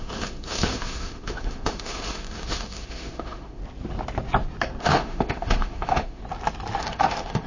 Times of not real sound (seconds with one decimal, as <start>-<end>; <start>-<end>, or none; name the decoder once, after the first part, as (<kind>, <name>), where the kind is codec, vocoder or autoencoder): 0.0-3.6 (autoencoder, DAC-VAE); 4.8-6.2; 6.8-7.5